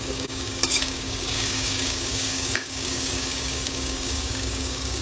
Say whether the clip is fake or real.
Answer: fake